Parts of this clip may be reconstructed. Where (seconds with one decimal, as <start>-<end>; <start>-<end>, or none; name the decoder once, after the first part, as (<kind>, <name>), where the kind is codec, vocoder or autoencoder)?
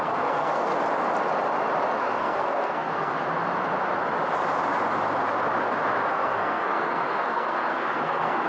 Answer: 0.0-0.7 (codec, SNAC); 2.0-3.1; 6.1-8.5